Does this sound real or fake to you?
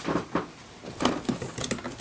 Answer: real